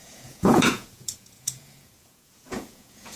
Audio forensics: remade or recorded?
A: remade